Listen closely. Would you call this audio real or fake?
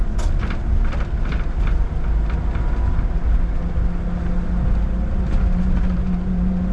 real